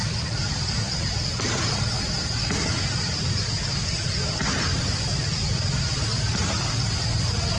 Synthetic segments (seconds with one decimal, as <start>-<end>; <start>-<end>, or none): none